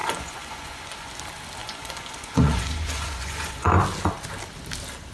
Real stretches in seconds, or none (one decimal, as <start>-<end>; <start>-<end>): 1.1-1.6; 3.7-5.1